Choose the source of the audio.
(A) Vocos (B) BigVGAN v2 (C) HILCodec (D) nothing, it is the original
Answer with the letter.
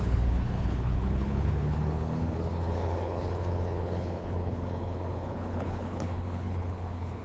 C